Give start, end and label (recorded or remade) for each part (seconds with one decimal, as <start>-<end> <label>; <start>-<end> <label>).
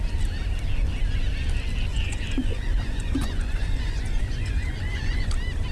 0.0-1.9 recorded; 1.9-5.3 remade; 5.3-5.7 recorded